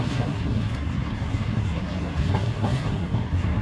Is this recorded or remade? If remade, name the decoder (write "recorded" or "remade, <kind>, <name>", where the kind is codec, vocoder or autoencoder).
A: remade, codec, SNAC